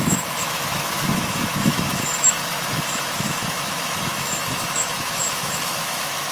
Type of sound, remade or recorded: remade